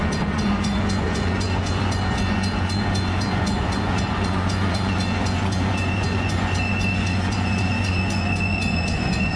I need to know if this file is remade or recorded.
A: remade